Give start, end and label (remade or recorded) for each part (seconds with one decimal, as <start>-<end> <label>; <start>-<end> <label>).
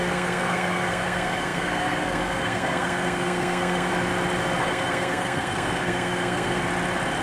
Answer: 0.0-3.9 remade; 3.9-4.6 recorded; 4.6-6.6 remade; 6.6-7.2 recorded